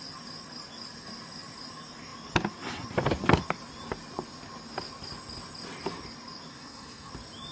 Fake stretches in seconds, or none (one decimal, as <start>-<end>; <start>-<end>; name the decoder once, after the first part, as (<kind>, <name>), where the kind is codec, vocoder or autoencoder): 6.5-7.1 (codec, SNAC)